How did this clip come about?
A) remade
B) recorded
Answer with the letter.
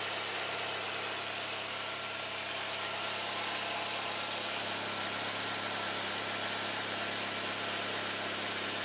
B